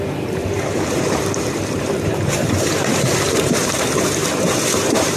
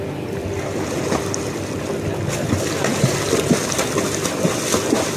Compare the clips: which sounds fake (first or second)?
first